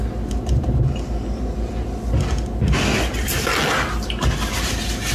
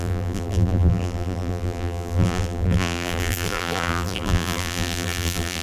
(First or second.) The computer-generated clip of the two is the second